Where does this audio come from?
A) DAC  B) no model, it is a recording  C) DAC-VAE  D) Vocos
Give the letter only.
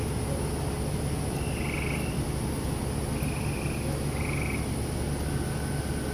B